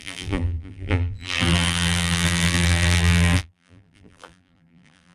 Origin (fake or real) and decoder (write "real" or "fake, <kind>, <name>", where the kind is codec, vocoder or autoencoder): fake, vocoder, BigVGAN v2